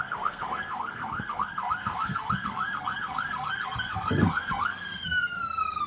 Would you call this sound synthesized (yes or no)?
yes